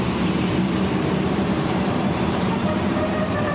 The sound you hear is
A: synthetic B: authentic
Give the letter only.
A